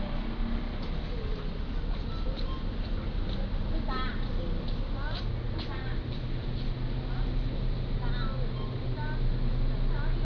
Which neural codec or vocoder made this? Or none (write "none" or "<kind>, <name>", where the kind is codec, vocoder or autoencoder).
none